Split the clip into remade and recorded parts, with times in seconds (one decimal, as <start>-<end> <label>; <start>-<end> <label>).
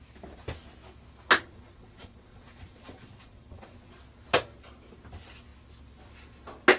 0.0-1.4 recorded; 1.4-4.0 remade; 4.0-6.8 recorded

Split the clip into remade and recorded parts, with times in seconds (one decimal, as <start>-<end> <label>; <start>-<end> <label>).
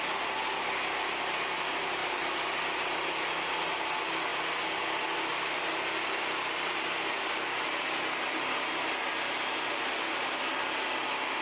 0.0-11.4 recorded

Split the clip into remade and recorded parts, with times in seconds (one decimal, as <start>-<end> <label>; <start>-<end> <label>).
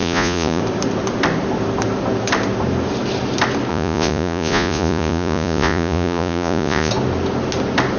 0.0-0.6 remade; 0.6-3.7 recorded; 3.7-6.9 remade; 6.9-8.0 recorded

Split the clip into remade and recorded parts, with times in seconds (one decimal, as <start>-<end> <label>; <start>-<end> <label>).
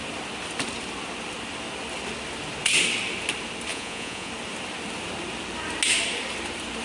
0.0-3.7 recorded; 3.7-4.3 remade; 4.3-6.8 recorded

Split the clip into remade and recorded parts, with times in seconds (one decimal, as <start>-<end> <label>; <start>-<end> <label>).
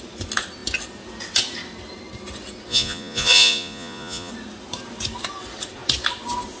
0.0-2.7 recorded; 2.7-4.3 remade; 4.3-6.6 recorded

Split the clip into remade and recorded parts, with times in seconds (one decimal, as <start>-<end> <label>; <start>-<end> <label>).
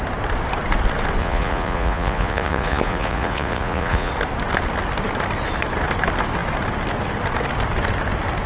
0.0-1.2 recorded; 1.2-4.1 remade; 4.1-8.5 recorded